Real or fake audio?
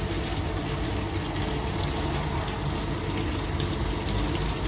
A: real